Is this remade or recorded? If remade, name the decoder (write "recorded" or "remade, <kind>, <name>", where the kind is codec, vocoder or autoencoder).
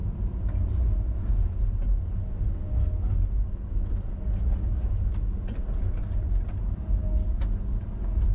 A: recorded